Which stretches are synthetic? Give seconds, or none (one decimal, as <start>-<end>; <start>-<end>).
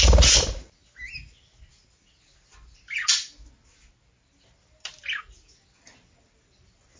none